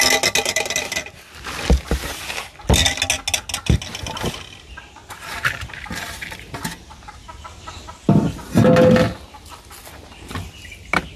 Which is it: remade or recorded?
recorded